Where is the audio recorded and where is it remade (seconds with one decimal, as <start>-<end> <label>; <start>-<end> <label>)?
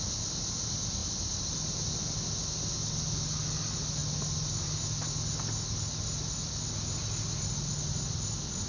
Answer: 0.0-8.7 recorded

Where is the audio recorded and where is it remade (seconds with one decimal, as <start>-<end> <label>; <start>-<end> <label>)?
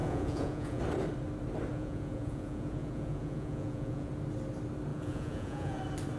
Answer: 0.0-0.8 remade; 0.8-1.7 recorded; 1.7-4.1 remade; 4.1-4.9 recorded; 4.9-5.8 remade; 5.8-6.2 recorded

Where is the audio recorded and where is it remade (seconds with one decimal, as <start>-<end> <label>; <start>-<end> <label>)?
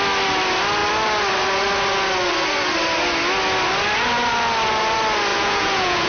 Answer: 0.0-5.3 recorded; 5.3-6.1 remade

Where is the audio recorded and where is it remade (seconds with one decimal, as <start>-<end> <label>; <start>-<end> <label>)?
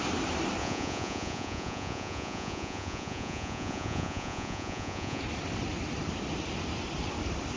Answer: 0.0-0.6 recorded; 0.6-5.2 remade; 5.2-7.6 recorded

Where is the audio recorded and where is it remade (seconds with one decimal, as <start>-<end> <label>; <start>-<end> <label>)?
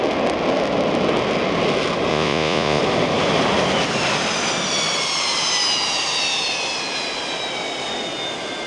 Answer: 0.0-2.1 recorded; 2.1-2.8 remade; 2.8-8.7 recorded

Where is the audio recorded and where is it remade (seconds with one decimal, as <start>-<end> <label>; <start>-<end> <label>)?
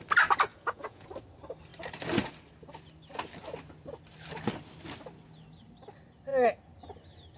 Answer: 0.0-0.5 recorded; 0.5-1.1 remade; 1.1-7.4 recorded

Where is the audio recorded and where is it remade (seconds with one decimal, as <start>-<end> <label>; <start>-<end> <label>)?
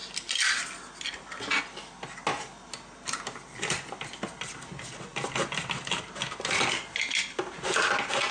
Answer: 0.0-8.3 recorded